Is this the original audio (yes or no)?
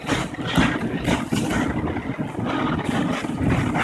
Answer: yes